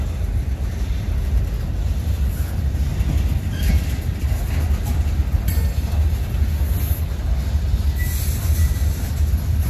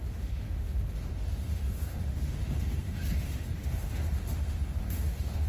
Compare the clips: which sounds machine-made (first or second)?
second